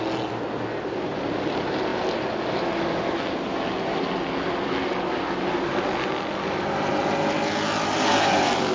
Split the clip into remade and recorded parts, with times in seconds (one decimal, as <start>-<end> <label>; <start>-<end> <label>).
0.0-8.7 recorded